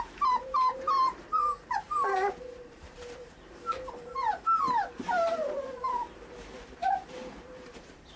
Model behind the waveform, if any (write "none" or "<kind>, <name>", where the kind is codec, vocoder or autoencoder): vocoder, BigVGAN v2